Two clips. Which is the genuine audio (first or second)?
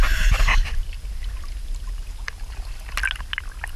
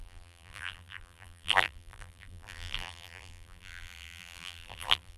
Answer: first